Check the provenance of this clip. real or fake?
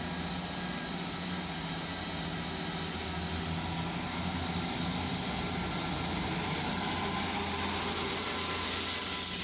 real